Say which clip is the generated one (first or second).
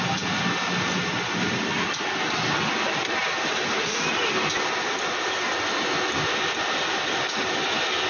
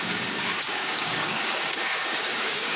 second